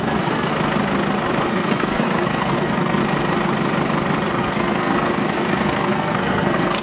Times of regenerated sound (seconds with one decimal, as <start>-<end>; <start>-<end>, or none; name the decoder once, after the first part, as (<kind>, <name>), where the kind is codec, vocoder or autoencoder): 0.0-0.5 (codec, SNAC); 1.5-3.0; 4.4-6.8